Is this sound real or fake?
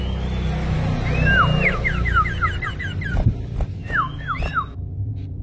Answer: real